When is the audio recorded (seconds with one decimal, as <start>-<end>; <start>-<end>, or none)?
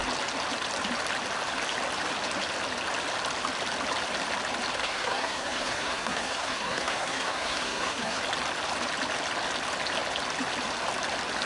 0.0-4.8; 8.2-11.5